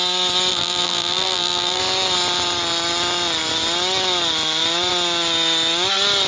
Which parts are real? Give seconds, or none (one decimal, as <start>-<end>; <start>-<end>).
0.0-0.5; 1.8-6.3